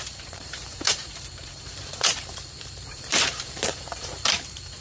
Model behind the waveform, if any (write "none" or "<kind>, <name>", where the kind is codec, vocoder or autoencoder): vocoder, BigVGAN v2